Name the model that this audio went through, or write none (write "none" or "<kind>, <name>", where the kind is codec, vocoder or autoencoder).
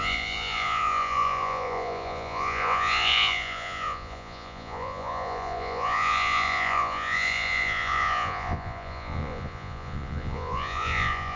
vocoder, Vocos